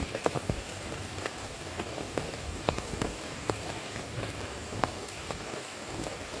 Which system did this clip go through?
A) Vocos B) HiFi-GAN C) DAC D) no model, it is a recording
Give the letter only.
C